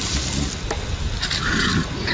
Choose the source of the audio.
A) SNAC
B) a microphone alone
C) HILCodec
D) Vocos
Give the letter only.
B